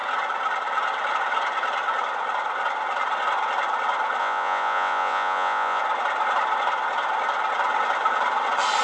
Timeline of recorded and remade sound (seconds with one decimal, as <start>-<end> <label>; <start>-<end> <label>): 0.0-4.2 recorded; 4.2-5.8 remade; 5.8-8.8 recorded